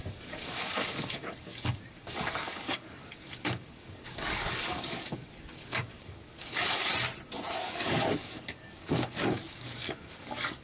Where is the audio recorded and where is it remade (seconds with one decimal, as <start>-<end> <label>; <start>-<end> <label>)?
0.0-6.9 remade; 6.9-7.6 recorded; 7.6-10.6 remade